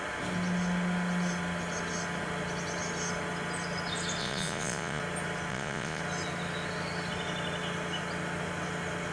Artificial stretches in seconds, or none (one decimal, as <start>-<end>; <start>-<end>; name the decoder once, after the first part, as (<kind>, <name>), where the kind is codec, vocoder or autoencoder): 4.2-5.0 (vocoder, Vocos); 5.5-6.0

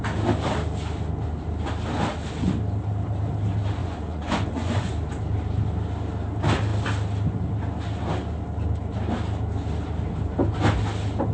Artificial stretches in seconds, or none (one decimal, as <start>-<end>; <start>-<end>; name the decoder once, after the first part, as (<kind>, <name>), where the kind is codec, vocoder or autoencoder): 3.8-4.9 (vocoder, Vocos)

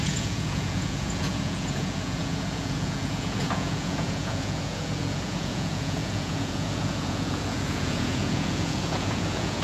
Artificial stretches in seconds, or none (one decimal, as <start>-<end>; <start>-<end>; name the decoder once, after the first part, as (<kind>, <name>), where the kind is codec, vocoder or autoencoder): 0.0-9.6 (vocoder, Vocos)

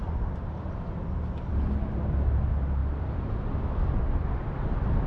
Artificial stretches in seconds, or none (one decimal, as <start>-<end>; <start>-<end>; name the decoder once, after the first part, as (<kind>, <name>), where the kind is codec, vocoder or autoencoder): none

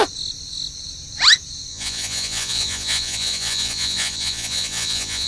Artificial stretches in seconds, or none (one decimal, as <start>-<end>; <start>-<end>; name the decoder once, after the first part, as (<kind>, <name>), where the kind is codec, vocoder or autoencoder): 1.7-5.3 (vocoder, Vocos)

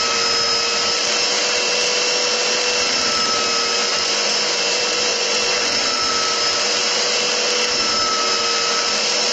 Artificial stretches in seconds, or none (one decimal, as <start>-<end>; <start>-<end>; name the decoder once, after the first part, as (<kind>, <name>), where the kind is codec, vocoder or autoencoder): 3.8-6.1 (vocoder, Vocos)